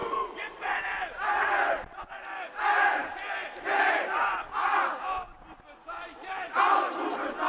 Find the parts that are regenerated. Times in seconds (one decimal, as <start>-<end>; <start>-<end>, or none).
0.0-0.8